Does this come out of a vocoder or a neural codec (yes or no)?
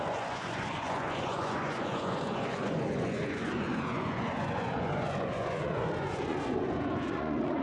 yes